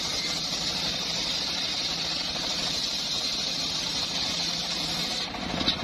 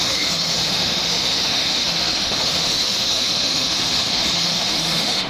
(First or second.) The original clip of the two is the first